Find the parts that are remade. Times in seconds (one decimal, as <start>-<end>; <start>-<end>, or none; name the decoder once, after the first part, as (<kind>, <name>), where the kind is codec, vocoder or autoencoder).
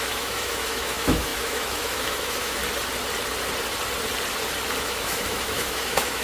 0.0-2.6 (autoencoder, DAC-VAE); 4.8-6.2